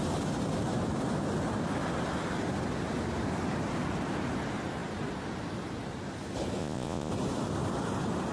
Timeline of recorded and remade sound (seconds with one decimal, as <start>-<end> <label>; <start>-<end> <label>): 0.0-6.6 recorded; 6.6-7.1 remade; 7.1-8.3 recorded